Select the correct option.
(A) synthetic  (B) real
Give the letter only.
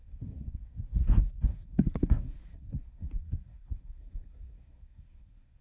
A